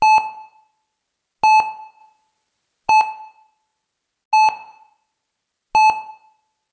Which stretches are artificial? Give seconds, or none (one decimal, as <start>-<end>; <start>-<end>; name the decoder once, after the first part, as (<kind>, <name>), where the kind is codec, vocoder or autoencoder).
none